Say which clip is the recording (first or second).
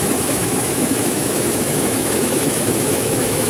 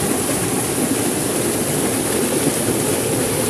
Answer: second